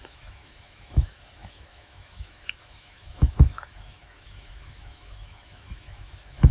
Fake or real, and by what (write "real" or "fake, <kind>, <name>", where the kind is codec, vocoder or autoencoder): fake, autoencoder, DAC-VAE